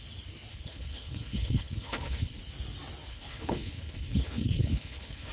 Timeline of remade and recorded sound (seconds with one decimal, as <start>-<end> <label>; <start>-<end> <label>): 0.0-0.5 recorded; 0.5-2.4 remade; 2.4-3.1 recorded; 3.1-5.3 remade